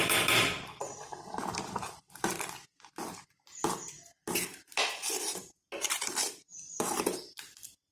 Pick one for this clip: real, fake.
real